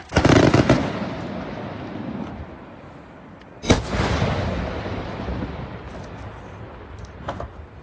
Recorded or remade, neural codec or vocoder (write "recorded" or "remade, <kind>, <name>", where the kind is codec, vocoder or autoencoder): recorded